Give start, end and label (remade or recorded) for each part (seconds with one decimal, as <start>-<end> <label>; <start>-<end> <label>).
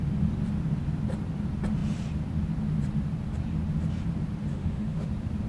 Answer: 0.0-4.5 recorded; 4.5-5.1 remade; 5.1-5.5 recorded